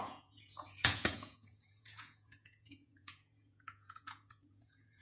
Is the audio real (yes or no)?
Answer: no